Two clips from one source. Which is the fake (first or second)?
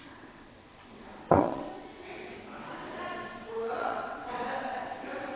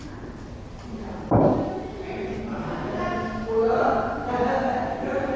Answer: first